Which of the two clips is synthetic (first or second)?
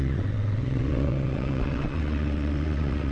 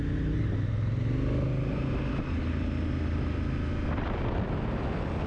first